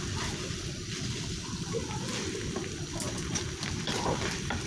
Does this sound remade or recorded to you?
recorded